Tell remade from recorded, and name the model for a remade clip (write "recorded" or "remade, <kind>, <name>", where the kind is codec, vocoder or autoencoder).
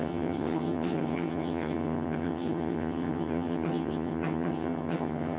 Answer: remade, vocoder, HiFi-GAN